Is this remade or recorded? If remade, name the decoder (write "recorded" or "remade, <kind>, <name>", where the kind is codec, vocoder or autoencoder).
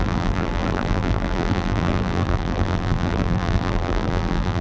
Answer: remade, vocoder, BigVGAN v2